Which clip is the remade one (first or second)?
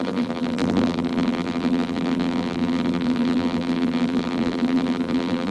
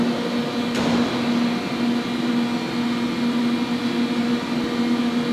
first